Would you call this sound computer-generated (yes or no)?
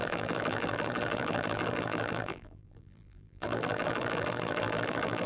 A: yes